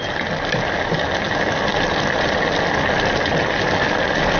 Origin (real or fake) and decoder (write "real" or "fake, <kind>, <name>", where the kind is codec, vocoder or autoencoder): real